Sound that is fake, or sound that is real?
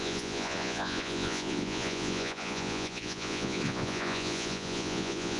fake